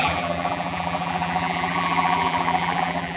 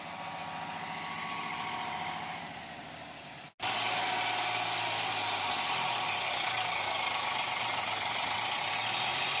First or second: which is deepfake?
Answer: first